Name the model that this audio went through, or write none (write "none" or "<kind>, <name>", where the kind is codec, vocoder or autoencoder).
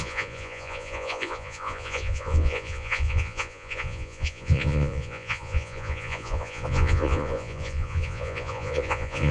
vocoder, Vocos